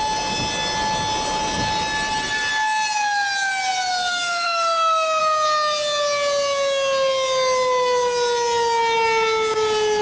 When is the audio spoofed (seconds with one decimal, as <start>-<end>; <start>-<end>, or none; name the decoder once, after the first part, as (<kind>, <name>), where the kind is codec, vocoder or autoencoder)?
4.1-5.2 (autoencoder, DAC-VAE)